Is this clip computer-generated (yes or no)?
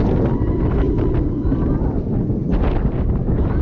no